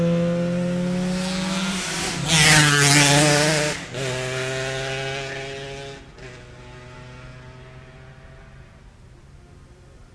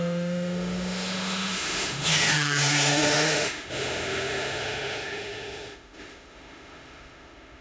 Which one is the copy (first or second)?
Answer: second